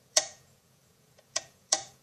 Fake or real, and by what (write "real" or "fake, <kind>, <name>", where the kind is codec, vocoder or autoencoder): fake, vocoder, Vocos